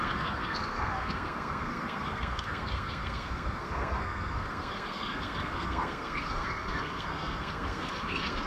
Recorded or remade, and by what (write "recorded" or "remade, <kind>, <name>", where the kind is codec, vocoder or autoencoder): remade, codec, SNAC